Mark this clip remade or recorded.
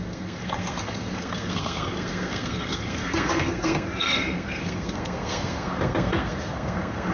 remade